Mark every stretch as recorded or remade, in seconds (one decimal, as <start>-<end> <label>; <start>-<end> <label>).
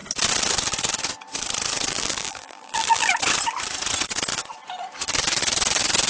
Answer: 0.0-1.9 recorded; 1.9-3.1 remade; 3.1-6.1 recorded